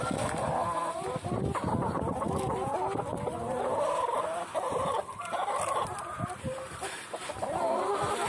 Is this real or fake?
real